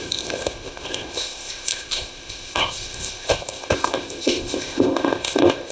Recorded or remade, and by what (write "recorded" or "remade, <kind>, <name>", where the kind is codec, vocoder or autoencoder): remade, codec, ZipCodec